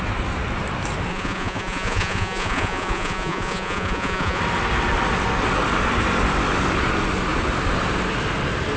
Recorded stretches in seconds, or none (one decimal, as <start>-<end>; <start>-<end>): 0.0-1.1; 4.4-8.8